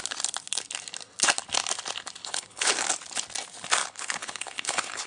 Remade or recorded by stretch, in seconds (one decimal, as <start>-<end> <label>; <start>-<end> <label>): 0.0-2.2 recorded; 2.2-2.7 remade; 2.7-3.8 recorded; 3.8-5.1 remade